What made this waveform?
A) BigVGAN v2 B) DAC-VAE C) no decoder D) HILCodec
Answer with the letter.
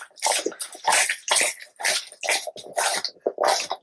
C